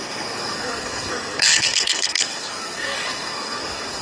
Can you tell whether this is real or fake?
fake